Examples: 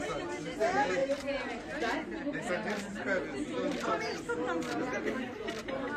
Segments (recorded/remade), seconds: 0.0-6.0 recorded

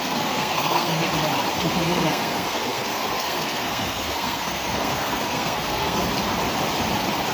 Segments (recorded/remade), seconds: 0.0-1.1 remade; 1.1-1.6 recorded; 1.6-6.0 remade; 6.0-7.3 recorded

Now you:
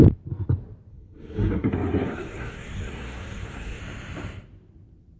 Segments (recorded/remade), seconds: 0.0-0.9 recorded; 0.9-3.8 remade; 3.8-5.2 recorded